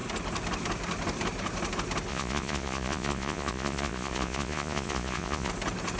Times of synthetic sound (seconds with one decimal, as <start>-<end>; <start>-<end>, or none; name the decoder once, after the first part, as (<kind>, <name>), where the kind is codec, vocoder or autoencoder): 2.1-5.5 (vocoder, Vocos)